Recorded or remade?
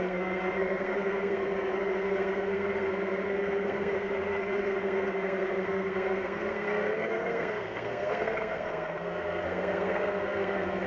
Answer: remade